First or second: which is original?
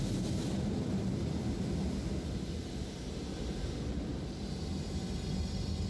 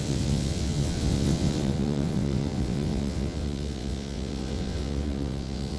first